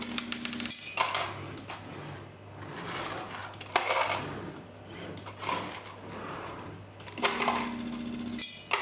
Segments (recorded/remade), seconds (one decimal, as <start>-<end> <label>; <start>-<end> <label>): 0.0-8.8 recorded